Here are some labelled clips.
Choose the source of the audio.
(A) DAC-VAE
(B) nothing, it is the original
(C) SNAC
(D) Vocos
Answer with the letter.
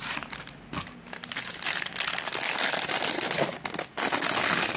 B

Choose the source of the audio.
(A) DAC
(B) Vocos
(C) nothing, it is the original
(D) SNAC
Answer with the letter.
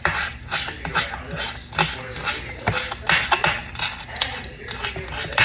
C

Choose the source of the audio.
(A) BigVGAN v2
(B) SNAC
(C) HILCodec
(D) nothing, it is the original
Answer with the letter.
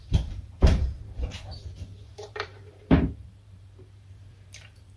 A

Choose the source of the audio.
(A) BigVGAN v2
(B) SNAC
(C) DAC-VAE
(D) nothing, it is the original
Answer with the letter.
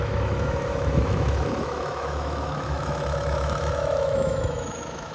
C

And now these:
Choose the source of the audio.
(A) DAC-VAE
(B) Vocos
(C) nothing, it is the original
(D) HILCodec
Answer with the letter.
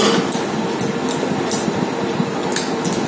C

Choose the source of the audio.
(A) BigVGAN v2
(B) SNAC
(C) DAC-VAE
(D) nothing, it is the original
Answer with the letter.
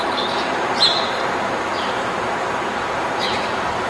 A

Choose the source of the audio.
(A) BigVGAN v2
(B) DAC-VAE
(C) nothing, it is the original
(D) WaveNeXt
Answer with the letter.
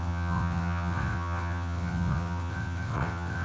D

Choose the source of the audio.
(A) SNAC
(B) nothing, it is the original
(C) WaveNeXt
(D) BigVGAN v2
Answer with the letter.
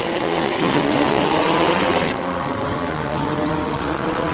C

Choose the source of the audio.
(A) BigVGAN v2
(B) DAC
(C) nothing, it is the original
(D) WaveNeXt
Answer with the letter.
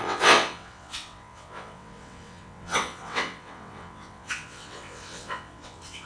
D